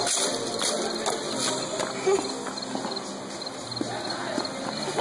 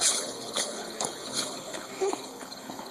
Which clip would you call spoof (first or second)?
second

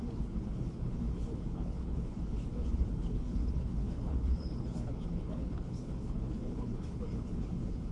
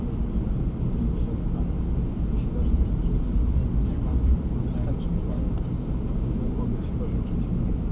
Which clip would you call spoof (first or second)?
first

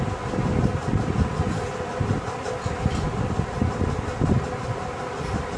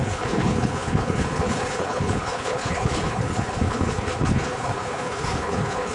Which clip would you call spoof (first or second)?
second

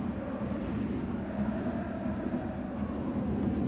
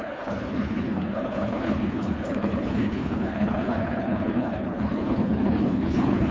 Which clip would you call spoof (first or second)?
second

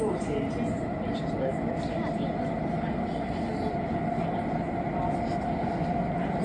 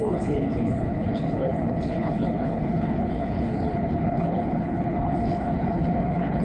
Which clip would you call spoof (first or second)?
second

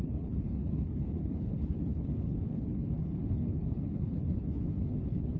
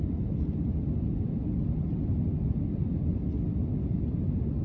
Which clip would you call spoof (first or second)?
first